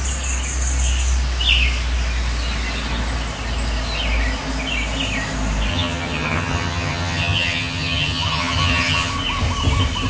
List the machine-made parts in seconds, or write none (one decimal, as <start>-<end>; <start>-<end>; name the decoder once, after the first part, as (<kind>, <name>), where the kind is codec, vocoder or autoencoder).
5.7-9.1 (vocoder, HiFi-GAN)